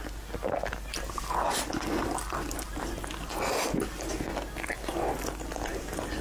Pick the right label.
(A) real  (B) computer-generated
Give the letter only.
A